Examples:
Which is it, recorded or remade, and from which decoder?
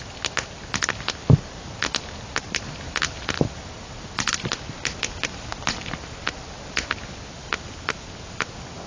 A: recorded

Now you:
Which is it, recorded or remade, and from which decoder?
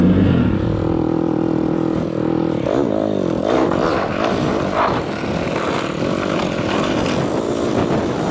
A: recorded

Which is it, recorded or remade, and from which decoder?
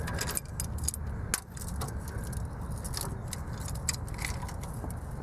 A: recorded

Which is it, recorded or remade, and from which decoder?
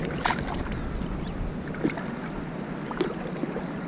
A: recorded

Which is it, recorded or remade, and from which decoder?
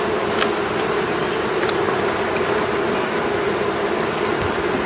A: recorded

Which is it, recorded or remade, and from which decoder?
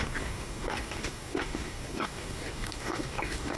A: remade, codec, DAC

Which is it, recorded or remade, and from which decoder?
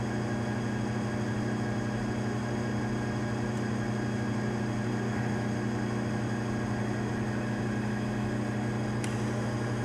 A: recorded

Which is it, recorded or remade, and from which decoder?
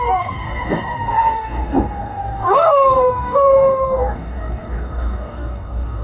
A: remade, codec, DAC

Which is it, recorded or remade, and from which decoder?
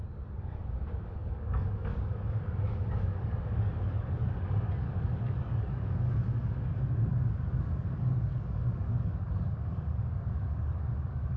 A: remade, codec, DAC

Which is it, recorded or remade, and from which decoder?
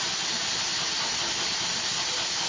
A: recorded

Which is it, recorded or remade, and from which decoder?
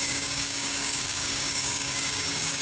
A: remade, codec, DAC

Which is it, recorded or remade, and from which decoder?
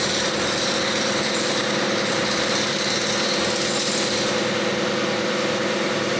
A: recorded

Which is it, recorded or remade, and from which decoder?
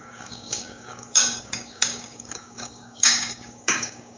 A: remade, codec, DAC